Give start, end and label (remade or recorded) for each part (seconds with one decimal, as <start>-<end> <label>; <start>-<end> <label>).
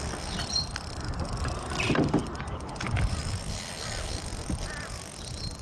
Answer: 0.0-5.6 recorded